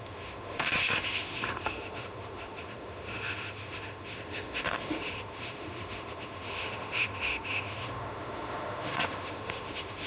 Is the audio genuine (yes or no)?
no